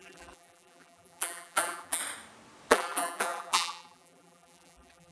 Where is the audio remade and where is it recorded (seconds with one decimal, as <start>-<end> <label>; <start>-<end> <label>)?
0.0-2.0 remade; 2.0-2.7 recorded; 2.7-5.1 remade